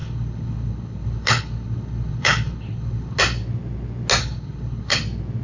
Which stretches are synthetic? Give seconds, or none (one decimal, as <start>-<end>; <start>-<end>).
0.0-3.2; 4.2-5.0

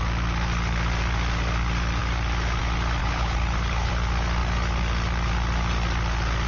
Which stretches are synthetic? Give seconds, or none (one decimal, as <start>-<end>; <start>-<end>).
3.0-3.9

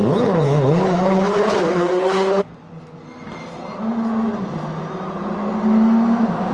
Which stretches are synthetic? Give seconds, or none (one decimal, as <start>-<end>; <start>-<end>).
0.0-2.4

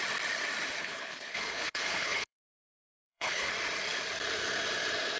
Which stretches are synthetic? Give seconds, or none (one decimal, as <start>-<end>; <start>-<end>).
0.8-2.4; 2.9-3.5

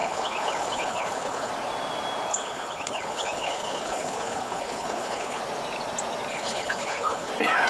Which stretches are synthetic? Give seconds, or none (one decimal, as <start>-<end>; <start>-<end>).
0.0-1.5; 2.3-5.4; 6.3-7.3

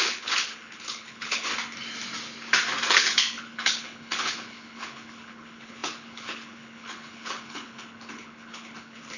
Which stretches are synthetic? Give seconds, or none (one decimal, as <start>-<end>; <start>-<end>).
0.0-1.5; 2.9-9.2

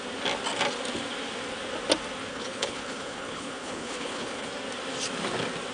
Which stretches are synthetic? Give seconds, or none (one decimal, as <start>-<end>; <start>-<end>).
2.3-4.5

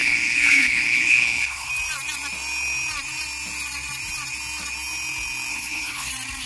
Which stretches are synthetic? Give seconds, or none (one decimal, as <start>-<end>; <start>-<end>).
0.0-1.7; 5.5-6.1